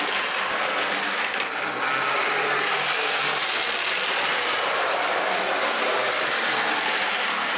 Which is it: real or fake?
real